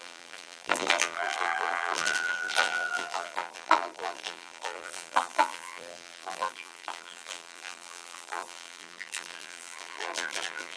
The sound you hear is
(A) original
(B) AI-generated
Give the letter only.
B